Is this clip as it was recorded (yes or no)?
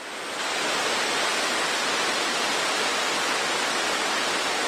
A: yes